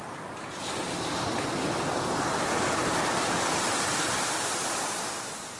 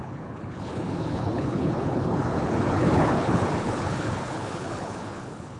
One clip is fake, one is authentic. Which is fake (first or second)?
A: second